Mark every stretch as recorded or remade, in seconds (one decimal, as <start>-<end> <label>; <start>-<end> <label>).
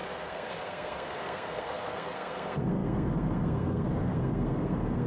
0.0-5.1 remade